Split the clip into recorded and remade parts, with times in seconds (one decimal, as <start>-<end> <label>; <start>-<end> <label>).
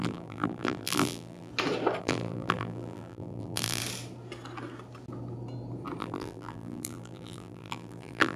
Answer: 0.0-1.5 remade; 1.5-2.0 recorded; 2.0-3.8 remade; 3.8-6.0 recorded; 6.0-8.4 remade